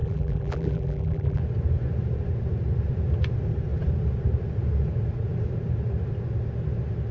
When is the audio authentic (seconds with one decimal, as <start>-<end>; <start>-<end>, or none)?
1.4-7.1